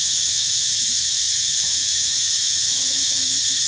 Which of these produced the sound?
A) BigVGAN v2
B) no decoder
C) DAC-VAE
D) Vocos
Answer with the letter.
C